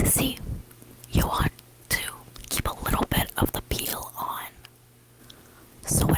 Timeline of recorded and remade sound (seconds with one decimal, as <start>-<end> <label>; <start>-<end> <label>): 0.0-6.2 recorded